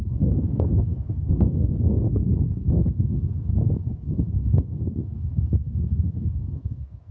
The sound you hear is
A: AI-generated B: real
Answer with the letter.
A